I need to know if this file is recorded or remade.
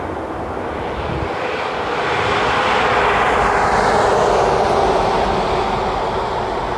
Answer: recorded